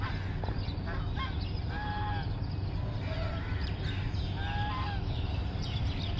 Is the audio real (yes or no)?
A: yes